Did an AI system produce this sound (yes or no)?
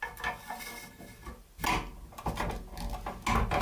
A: no